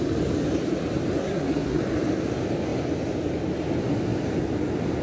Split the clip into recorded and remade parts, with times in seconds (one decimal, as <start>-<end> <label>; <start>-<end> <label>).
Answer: 0.0-1.2 recorded; 1.2-1.8 remade; 1.8-5.0 recorded